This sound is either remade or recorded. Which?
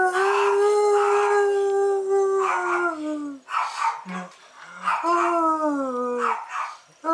recorded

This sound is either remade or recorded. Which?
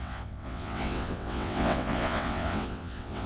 remade